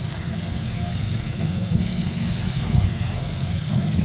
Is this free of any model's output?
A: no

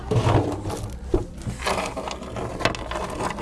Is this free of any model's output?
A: yes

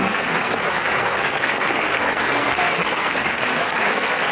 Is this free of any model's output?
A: no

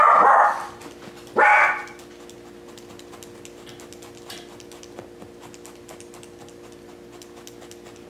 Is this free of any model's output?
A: yes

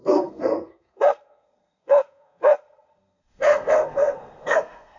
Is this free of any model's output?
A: no